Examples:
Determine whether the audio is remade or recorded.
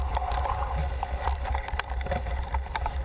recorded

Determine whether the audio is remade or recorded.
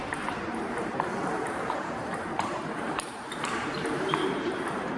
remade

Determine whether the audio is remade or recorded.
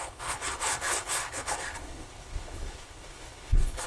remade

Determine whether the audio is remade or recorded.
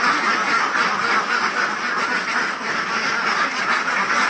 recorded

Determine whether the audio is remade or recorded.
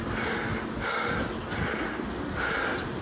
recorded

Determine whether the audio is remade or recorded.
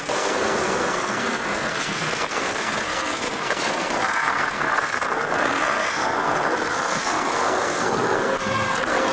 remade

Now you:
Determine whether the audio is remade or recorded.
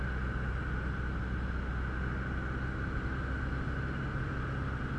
recorded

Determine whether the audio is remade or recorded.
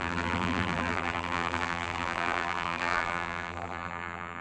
remade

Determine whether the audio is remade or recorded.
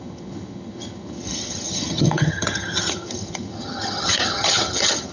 remade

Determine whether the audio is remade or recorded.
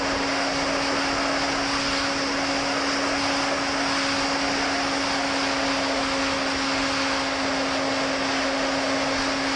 recorded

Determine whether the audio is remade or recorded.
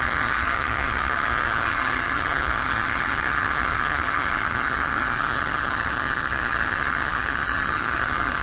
remade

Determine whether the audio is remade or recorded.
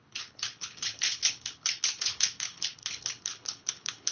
remade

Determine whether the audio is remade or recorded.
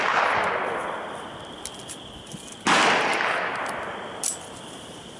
recorded